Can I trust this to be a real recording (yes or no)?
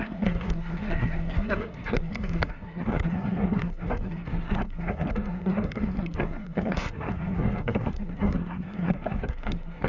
no